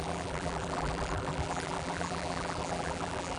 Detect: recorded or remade remade